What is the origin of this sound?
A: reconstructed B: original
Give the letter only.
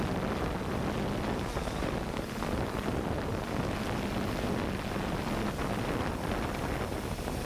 B